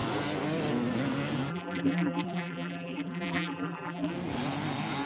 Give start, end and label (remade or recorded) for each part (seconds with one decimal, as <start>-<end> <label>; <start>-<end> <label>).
0.0-1.5 recorded; 1.5-4.1 remade; 4.1-5.1 recorded